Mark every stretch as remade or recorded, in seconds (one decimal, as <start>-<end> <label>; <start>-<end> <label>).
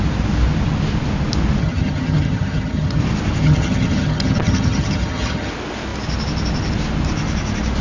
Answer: 0.0-1.6 recorded; 1.6-3.0 remade; 3.0-3.4 recorded; 3.4-5.5 remade; 5.5-7.8 recorded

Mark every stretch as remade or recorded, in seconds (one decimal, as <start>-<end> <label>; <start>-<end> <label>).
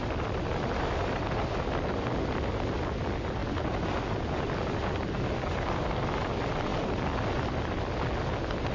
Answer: 0.0-8.7 recorded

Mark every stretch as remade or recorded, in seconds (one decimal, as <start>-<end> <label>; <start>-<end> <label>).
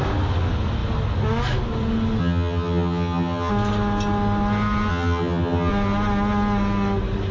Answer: 0.0-2.2 recorded; 2.2-3.5 remade; 3.5-4.9 recorded; 4.9-5.7 remade; 5.7-7.3 recorded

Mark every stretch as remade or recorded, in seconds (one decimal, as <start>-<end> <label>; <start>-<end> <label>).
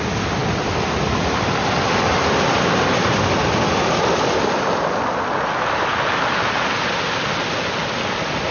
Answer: 0.0-8.5 recorded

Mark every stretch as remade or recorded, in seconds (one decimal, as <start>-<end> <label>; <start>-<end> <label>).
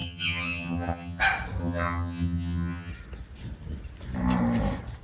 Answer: 0.0-1.2 remade; 1.2-1.6 recorded; 1.6-2.9 remade; 2.9-5.0 recorded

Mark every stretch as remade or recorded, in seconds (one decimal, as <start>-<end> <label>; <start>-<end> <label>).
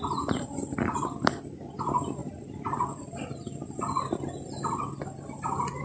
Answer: 0.0-5.8 recorded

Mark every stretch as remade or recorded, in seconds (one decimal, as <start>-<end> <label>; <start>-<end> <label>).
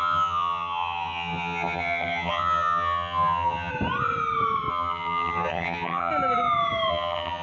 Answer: 0.0-3.7 remade; 3.7-4.7 recorded; 4.7-6.1 remade; 6.1-6.9 recorded; 6.9-7.4 remade